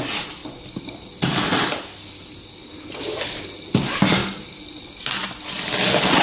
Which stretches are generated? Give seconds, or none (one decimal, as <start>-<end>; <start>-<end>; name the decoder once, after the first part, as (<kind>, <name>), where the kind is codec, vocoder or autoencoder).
none

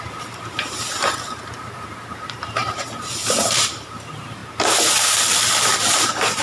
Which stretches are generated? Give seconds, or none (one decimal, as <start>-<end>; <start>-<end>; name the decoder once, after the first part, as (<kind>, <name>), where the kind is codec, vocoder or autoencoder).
0.0-4.4 (vocoder, BigVGAN v2); 5.5-6.4

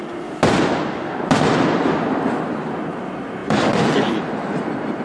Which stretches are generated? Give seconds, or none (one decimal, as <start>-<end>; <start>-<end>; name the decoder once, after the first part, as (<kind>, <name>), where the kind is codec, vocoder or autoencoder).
3.4-5.0 (vocoder, BigVGAN v2)

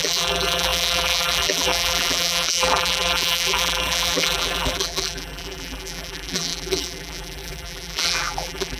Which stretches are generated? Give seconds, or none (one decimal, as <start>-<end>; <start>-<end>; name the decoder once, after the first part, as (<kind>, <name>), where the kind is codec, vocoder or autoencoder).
0.0-8.8 (vocoder, BigVGAN v2)